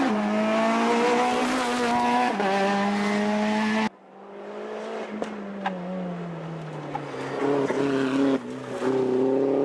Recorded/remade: recorded